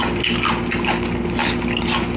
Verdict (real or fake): real